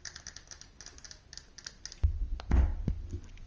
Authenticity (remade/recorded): recorded